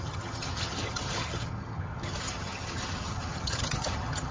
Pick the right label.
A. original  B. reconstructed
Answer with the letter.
B